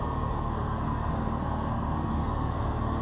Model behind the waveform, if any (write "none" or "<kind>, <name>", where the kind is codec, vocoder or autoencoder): codec, SNAC